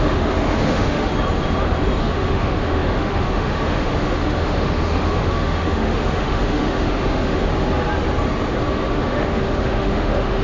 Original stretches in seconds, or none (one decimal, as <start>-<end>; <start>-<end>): 1.1-2.0; 7.5-8.9